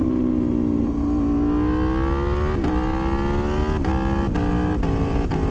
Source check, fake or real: real